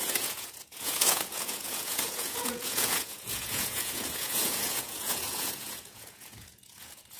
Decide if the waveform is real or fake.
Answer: fake